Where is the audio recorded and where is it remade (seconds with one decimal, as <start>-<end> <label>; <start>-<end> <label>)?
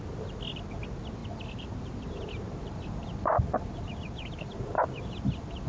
0.0-1.2 recorded; 1.2-1.8 remade; 1.8-3.3 recorded; 3.3-4.6 remade; 4.6-5.7 recorded